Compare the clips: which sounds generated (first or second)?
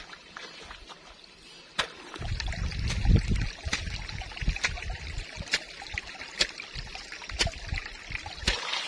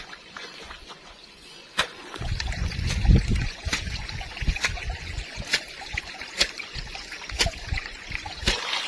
second